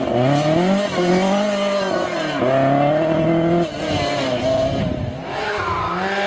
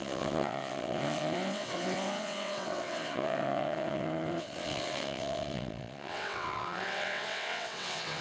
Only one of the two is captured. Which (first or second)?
first